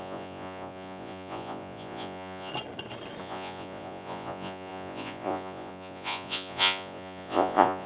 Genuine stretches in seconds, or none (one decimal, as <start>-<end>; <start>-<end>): 2.5-3.2